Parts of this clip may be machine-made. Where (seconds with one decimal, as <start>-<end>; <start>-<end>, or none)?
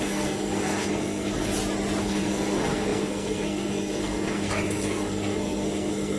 0.0-1.5; 2.0-6.2